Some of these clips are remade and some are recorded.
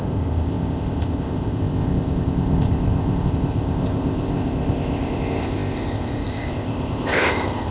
remade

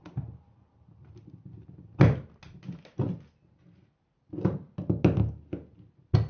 recorded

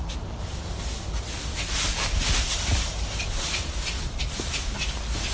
recorded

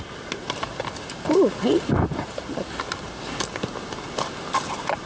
recorded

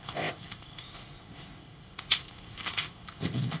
remade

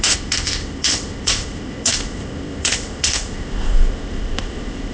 remade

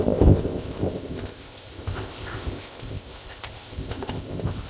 remade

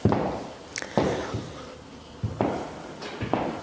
recorded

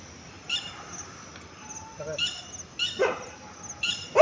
recorded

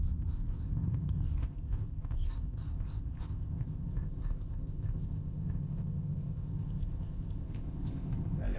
remade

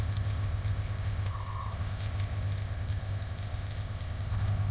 remade